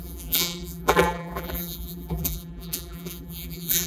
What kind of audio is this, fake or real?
fake